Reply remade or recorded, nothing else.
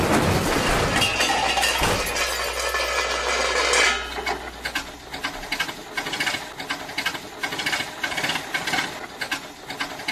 recorded